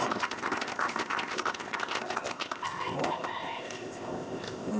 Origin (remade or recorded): remade